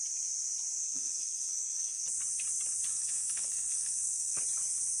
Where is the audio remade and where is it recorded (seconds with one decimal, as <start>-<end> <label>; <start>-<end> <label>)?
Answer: 0.0-0.8 recorded; 0.8-2.0 remade; 2.0-2.9 recorded; 2.9-4.4 remade; 4.4-5.0 recorded